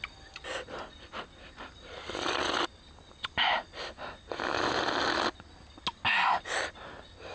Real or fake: real